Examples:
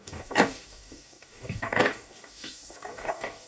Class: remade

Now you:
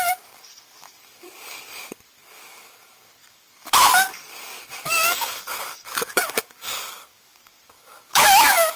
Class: remade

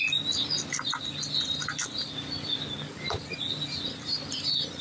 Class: recorded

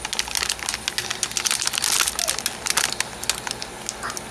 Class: recorded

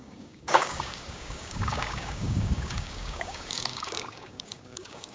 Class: remade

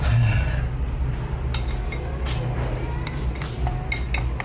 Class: recorded